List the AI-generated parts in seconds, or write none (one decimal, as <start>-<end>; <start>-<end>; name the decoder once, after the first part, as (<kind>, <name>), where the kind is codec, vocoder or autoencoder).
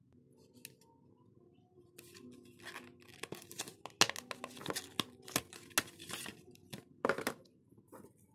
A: 6.0-7.1 (vocoder, BigVGAN v2)